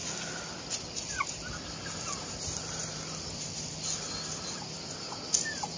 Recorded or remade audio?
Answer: recorded